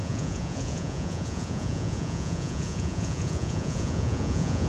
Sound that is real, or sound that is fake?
fake